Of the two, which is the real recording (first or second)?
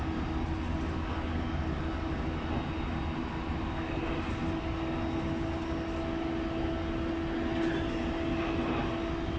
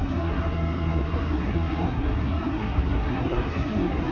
first